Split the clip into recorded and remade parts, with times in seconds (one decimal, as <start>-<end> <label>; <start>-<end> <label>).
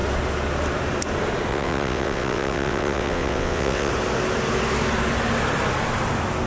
0.0-1.5 recorded; 1.5-3.9 remade; 3.9-6.5 recorded